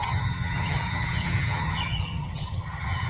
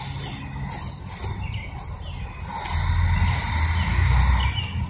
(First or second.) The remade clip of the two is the first